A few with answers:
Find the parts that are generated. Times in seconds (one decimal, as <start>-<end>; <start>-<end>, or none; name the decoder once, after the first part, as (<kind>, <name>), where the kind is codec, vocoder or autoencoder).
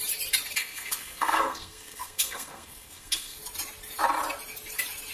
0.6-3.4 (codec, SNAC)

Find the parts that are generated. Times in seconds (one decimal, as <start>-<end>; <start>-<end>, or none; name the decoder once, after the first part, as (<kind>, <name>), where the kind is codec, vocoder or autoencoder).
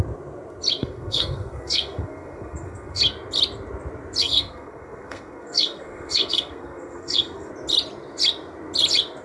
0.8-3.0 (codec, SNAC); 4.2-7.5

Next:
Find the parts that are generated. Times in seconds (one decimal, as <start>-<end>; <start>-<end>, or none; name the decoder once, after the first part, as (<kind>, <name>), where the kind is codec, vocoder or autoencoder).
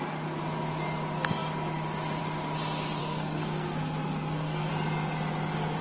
3.0-4.7 (codec, SNAC)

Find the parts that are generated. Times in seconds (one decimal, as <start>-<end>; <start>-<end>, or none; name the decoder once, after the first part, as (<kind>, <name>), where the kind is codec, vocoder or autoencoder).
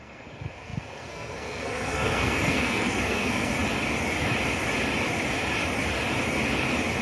0.0-3.5 (codec, SNAC)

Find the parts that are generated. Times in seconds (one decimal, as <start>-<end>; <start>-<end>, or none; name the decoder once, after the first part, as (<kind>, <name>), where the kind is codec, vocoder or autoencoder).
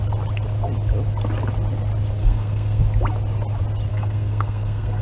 2.2-2.8 (codec, SNAC); 3.9-5.0